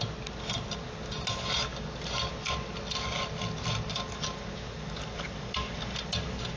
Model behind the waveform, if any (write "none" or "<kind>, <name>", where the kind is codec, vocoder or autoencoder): none